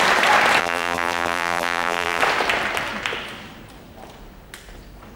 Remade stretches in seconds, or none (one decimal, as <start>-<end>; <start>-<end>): 0.6-2.2